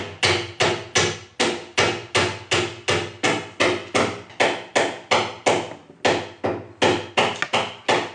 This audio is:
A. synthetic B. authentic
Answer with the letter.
B